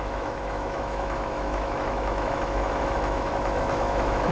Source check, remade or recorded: remade